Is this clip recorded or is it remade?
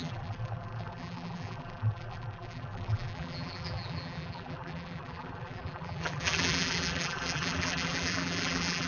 remade